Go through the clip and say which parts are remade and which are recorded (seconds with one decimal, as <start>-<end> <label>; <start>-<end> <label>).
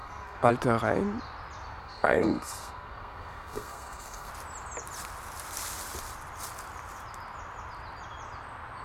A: 0.0-0.5 remade; 0.5-1.8 recorded; 1.8-4.3 remade; 4.3-8.8 recorded